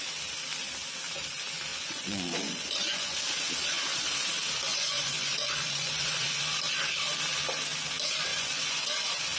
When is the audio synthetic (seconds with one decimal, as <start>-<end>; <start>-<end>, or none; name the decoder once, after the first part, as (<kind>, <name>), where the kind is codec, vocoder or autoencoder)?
1.7-3.2 (vocoder, Vocos); 4.7-6.4; 8.3-8.9